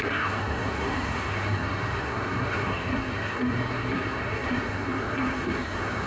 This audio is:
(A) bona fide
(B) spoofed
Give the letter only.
B